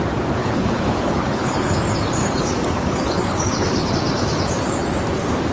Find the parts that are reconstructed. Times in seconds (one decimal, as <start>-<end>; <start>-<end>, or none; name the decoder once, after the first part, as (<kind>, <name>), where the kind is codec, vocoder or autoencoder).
0.4-1.8 (codec, HILCodec); 2.2-3.9